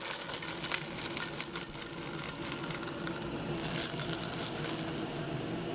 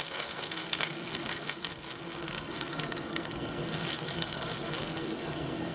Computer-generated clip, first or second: second